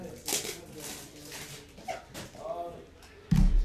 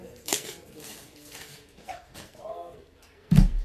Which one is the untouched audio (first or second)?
first